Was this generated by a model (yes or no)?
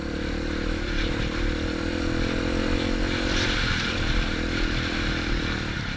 yes